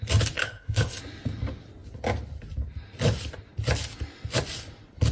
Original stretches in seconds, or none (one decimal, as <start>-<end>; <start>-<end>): 0.0-0.4; 1.0-5.1